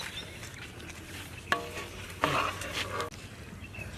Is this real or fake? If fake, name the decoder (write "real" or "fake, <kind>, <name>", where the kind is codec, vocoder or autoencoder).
real